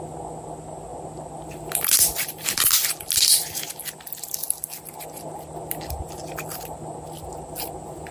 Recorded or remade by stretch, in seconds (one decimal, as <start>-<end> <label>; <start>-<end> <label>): 0.0-8.1 recorded